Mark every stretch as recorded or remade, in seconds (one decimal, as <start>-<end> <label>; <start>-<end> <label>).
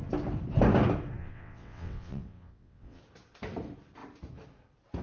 0.0-1.2 recorded; 1.2-3.0 remade; 3.0-5.0 recorded